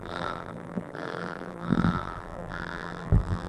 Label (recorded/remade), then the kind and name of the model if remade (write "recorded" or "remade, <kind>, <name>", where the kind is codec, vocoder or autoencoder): remade, vocoder, BigVGAN v2